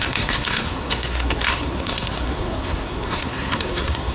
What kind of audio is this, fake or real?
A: fake